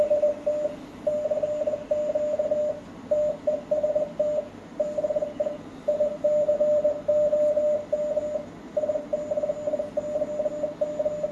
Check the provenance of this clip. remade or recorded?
recorded